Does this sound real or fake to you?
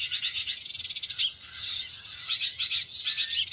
real